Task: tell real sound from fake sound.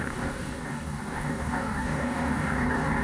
fake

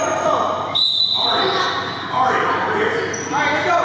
real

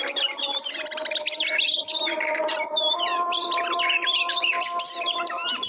real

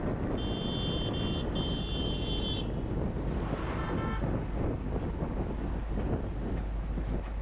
real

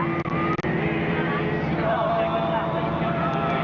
real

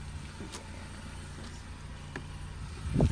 real